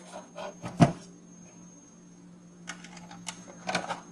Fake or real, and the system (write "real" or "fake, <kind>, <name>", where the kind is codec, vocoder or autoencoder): real